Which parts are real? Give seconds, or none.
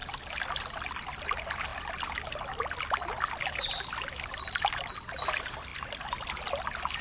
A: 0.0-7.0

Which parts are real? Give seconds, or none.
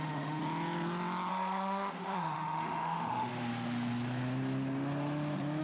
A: 0.4-1.3; 3.3-5.6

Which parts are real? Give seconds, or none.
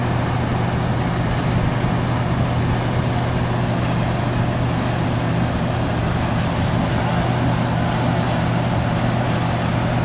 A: 0.0-10.0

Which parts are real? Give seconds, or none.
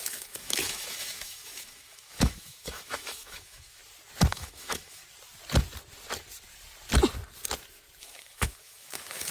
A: 3.8-4.3; 5.0-8.0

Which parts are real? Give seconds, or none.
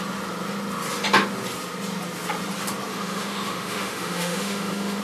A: 0.0-2.9